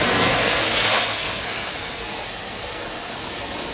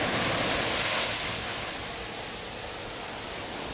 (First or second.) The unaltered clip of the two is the second